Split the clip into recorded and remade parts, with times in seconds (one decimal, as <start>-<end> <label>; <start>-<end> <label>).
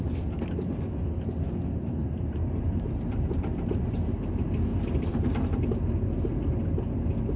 0.0-2.0 recorded; 2.0-3.9 remade; 3.9-4.7 recorded; 4.7-5.6 remade; 5.6-7.4 recorded